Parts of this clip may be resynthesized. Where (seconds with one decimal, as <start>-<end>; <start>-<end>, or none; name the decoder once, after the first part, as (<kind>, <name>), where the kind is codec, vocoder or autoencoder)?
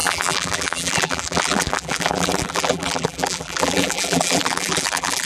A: 0.0-5.3 (vocoder, BigVGAN v2)